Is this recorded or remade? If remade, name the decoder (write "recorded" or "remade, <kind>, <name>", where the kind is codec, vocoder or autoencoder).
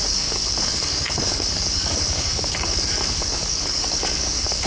remade, codec, DAC